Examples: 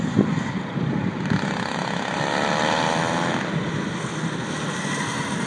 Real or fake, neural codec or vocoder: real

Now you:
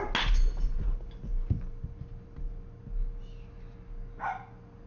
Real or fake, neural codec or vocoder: real